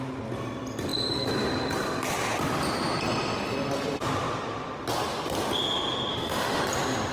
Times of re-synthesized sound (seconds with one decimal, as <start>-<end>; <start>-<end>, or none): 6.1-6.6